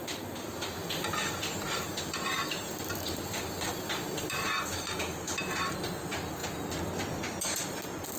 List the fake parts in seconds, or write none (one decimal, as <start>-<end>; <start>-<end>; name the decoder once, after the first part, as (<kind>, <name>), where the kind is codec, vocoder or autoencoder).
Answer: none